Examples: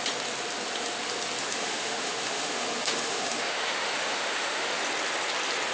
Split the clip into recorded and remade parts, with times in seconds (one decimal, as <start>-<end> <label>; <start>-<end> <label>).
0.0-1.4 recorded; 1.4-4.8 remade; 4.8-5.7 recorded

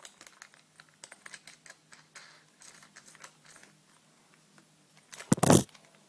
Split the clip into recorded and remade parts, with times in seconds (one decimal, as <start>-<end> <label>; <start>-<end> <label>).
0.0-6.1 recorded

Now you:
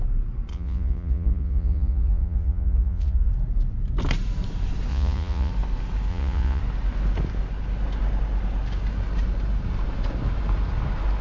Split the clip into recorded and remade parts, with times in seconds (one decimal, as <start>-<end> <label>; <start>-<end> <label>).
0.0-0.5 recorded; 0.5-3.3 remade; 3.3-4.9 recorded; 4.9-5.5 remade; 5.5-6.1 recorded; 6.1-6.6 remade; 6.6-11.2 recorded

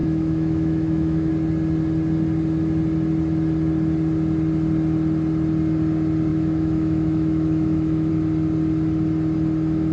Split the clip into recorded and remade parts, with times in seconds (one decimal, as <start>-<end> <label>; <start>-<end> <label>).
0.0-1.3 remade; 1.3-6.3 recorded; 6.3-8.1 remade; 8.1-9.9 recorded